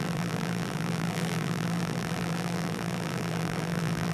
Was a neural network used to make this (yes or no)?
yes